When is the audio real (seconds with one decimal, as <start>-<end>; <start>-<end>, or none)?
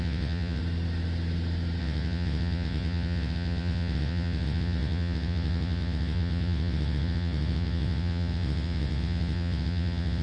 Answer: 0.6-1.8